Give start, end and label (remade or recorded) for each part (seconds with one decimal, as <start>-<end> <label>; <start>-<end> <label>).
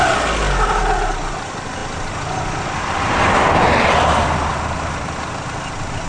0.0-1.8 recorded; 1.8-5.3 remade; 5.3-6.1 recorded